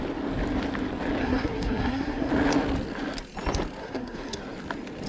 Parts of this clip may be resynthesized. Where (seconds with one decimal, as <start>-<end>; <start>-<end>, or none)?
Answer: 1.2-2.3; 3.8-4.4